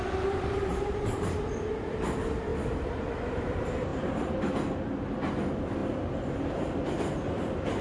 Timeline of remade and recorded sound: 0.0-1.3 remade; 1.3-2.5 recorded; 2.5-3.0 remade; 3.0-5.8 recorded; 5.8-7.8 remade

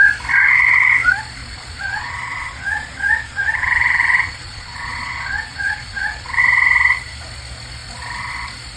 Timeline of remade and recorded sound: 0.0-1.4 recorded; 1.4-6.4 remade; 6.4-8.8 recorded

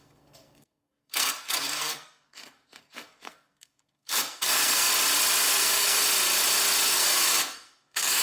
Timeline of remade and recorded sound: 0.0-4.9 remade; 4.9-5.5 recorded; 5.5-6.0 remade; 6.0-6.9 recorded; 6.9-8.2 remade